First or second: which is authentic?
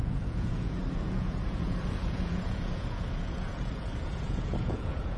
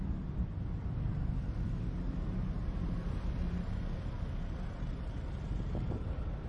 second